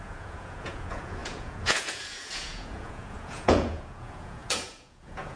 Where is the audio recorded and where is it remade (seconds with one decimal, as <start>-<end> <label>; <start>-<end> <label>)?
0.0-5.4 remade